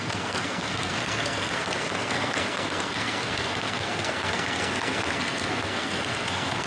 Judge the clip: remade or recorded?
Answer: remade